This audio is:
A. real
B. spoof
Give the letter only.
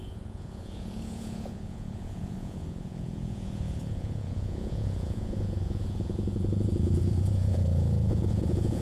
B